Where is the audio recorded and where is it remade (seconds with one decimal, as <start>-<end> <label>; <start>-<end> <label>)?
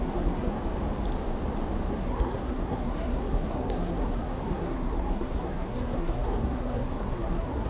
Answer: 0.0-0.6 remade; 0.6-1.9 recorded; 1.9-7.7 remade